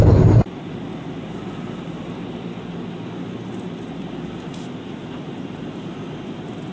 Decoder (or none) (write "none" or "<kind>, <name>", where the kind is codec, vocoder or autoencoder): none